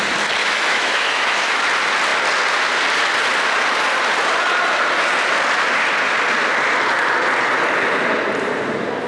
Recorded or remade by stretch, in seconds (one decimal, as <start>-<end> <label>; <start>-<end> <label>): 0.0-0.4 recorded; 0.4-1.6 remade; 1.6-9.1 recorded